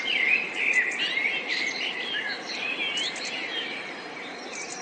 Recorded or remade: recorded